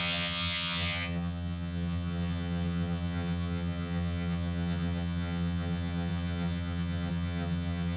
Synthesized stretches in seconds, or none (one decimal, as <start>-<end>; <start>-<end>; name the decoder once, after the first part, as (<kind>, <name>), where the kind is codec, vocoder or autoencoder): 0.0-8.0 (vocoder, HiFi-GAN)